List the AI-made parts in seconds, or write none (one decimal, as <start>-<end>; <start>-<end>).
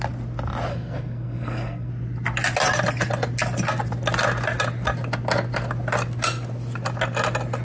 0.7-1.9